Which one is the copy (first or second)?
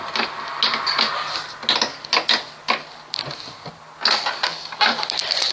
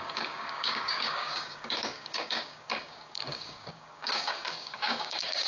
second